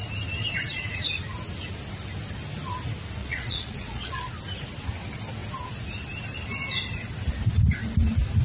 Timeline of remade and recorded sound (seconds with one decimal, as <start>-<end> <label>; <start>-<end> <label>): 0.0-3.2 recorded; 3.2-4.3 remade; 4.3-8.4 recorded